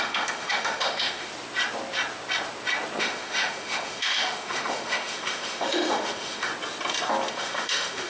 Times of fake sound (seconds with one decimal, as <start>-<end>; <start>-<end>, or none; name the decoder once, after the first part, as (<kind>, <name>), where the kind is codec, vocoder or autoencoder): 0.0-1.3 (autoencoder, DAC-VAE); 3.0-6.5; 7.3-8.1